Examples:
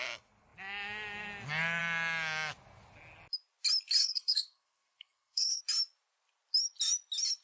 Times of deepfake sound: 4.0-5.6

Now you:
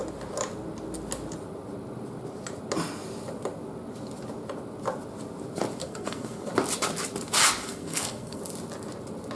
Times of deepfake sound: 5.8-6.5; 7.6-8.4

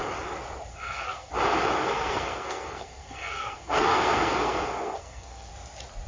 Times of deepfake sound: 0.7-1.3; 1.8-5.5

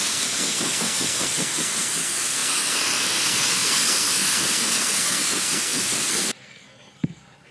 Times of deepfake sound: 0.0-7.5

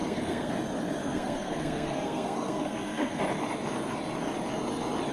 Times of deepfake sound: 0.0-0.5; 1.0-3.2

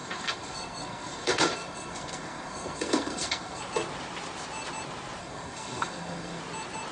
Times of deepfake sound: 0.0-3.6; 5.2-6.4

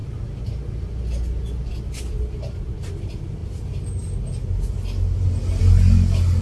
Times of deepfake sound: none

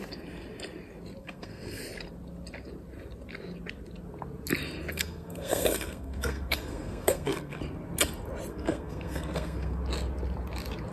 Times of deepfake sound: 1.2-1.8; 4.9-7.6; 8.5-9.8